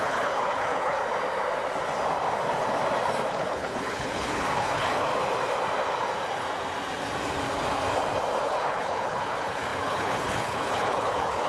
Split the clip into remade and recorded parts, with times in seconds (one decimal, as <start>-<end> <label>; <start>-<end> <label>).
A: 0.0-1.0 remade; 1.0-3.3 recorded; 3.3-5.1 remade; 5.1-8.4 recorded; 8.4-11.5 remade